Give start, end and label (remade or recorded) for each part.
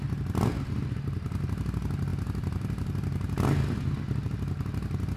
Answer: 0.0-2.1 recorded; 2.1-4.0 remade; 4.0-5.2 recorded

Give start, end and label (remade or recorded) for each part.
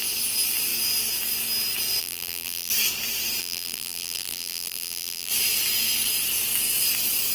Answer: 0.0-2.0 recorded; 2.0-2.7 remade; 2.7-3.4 recorded; 3.4-5.3 remade; 5.3-7.3 recorded